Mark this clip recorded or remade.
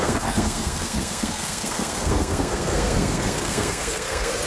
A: remade